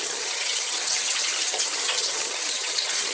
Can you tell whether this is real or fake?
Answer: fake